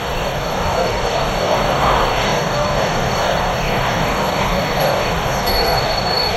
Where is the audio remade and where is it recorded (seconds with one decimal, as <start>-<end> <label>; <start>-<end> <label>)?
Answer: 0.0-6.4 remade